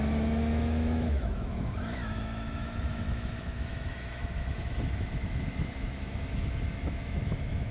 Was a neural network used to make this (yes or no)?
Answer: yes